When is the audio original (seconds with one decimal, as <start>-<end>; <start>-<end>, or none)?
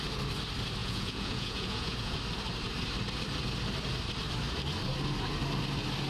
0.0-0.8; 2.2-6.1